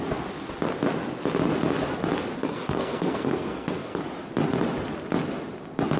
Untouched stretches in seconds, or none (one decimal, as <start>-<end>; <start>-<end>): 0.0-2.4; 4.0-6.0